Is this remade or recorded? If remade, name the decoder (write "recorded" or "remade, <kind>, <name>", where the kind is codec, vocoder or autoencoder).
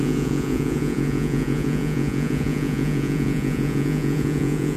remade, vocoder, Vocos